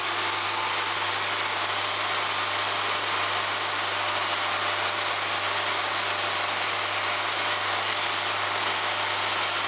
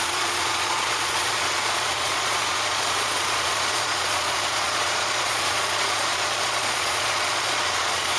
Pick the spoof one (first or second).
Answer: second